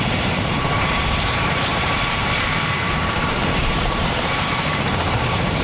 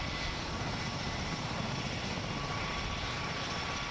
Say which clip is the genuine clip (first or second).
second